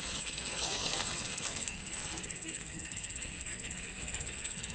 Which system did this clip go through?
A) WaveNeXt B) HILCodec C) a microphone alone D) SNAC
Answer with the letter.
D